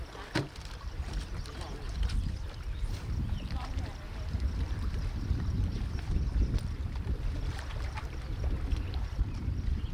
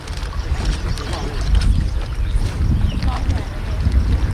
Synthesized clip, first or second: first